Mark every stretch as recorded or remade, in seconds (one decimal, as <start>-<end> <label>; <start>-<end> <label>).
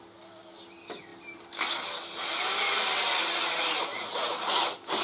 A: 0.0-5.0 recorded